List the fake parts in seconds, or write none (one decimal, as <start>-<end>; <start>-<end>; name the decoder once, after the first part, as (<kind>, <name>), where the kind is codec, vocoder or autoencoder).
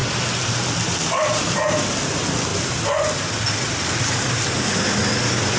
none